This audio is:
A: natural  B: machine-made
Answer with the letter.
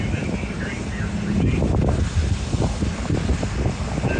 A